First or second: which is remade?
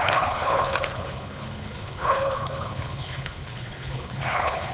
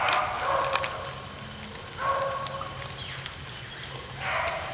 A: first